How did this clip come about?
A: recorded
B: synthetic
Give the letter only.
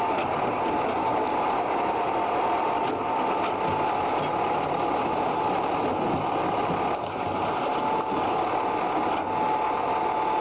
A